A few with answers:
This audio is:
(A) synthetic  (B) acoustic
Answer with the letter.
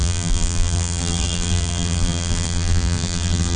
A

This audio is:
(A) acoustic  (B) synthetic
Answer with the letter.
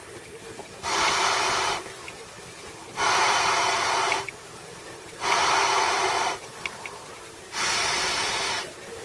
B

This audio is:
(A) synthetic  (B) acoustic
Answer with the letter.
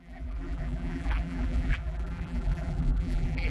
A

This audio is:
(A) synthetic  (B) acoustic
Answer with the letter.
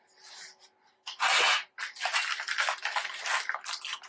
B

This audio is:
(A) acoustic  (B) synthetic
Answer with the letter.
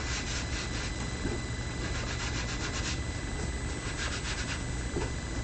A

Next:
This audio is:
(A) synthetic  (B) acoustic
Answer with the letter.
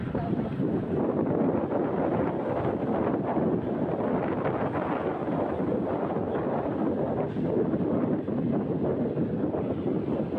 B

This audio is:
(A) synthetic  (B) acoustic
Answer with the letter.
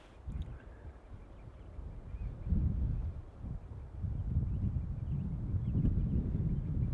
B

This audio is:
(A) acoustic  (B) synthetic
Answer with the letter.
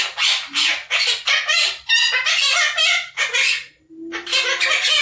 A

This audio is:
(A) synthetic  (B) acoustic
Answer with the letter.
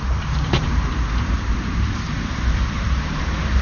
A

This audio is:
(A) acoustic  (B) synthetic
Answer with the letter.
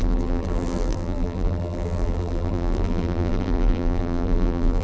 B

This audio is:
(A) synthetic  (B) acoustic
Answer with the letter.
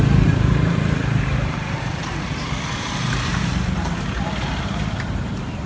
A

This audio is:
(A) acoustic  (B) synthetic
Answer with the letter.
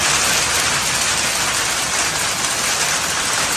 B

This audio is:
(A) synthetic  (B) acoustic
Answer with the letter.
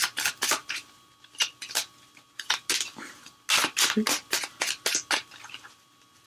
B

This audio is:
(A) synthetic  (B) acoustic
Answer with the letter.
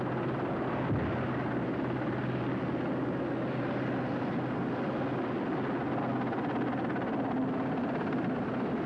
B